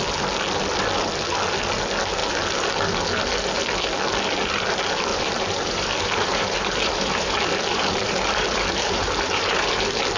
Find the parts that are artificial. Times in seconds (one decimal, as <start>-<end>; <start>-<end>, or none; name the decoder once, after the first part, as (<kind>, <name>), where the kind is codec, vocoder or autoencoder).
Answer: 5.1-10.2 (vocoder, BigVGAN v2)